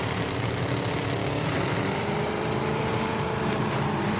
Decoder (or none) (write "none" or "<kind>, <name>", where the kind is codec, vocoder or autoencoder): vocoder, BigVGAN v2